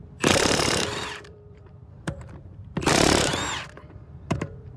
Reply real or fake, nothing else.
fake